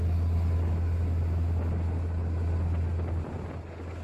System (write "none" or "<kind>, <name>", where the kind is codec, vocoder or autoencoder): none